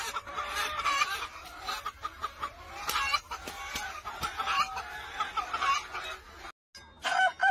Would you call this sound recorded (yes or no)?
yes